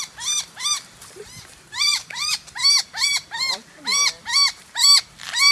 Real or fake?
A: fake